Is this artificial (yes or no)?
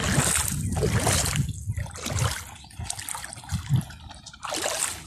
no